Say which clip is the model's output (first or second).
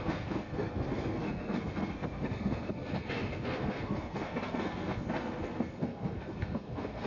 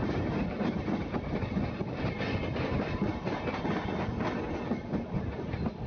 first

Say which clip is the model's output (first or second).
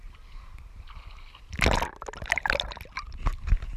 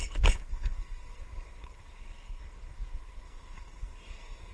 second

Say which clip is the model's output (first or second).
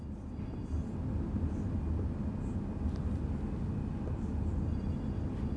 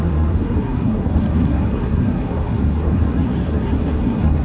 second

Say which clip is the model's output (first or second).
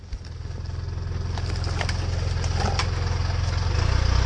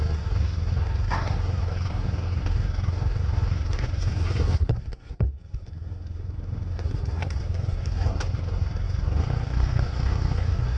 second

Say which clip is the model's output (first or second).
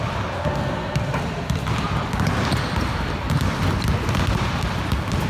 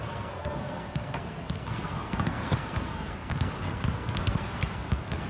second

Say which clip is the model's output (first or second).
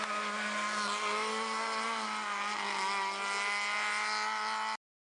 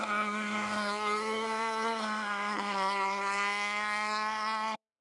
second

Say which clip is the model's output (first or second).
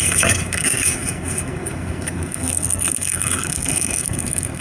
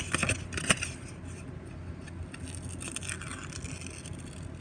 first